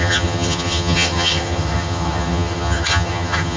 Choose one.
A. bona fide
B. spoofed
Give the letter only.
B